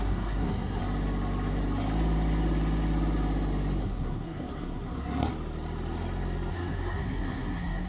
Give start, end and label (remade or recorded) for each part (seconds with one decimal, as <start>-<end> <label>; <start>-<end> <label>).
0.0-0.8 remade; 0.8-3.8 recorded; 3.8-5.3 remade; 5.3-6.5 recorded; 6.5-7.9 remade